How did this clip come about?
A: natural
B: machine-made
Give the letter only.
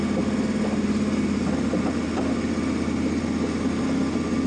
A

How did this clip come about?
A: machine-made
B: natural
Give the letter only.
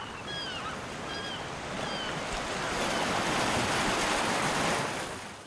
B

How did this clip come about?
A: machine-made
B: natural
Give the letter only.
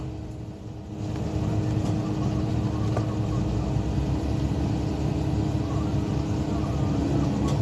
B